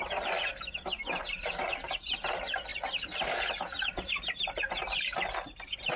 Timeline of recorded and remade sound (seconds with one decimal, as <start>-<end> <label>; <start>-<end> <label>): 0.0-0.5 recorded; 0.5-1.7 remade; 1.7-2.7 recorded; 2.7-6.0 remade